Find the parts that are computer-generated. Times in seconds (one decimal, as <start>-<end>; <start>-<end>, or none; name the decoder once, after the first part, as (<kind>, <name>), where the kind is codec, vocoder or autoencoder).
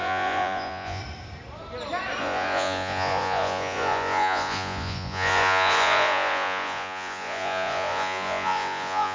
0.0-1.0 (vocoder, Vocos); 2.2-9.1